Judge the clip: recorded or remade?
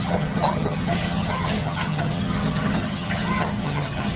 remade